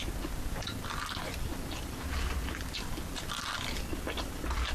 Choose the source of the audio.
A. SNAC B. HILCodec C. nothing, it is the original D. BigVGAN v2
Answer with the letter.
C